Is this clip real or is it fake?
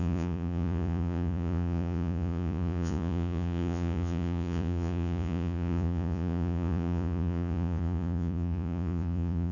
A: fake